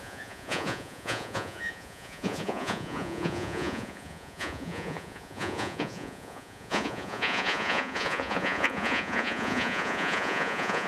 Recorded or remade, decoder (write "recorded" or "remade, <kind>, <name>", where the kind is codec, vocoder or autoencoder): remade, vocoder, Vocos